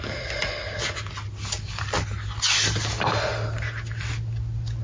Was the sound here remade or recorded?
recorded